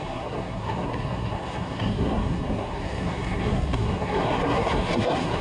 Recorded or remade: remade